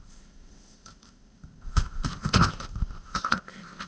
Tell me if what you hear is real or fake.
fake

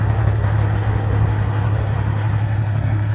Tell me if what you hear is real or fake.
fake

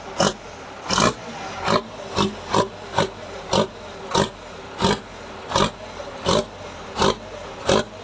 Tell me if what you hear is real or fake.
real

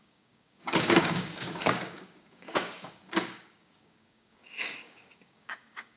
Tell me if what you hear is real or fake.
fake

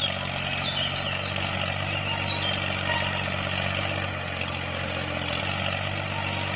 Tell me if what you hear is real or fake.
real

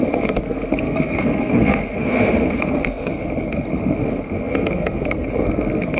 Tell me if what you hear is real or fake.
fake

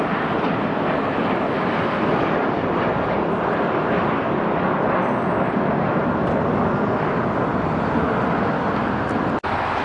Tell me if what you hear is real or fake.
real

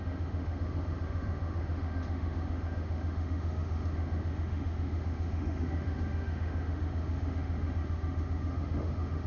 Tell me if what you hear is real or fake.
fake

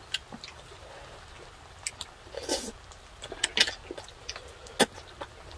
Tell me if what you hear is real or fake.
real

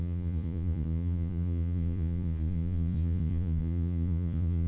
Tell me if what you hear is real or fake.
fake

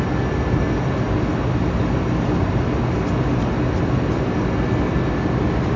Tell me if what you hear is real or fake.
real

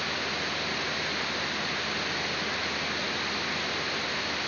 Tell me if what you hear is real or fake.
real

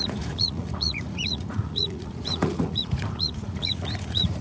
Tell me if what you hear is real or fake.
fake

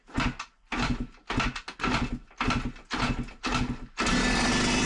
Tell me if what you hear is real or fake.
real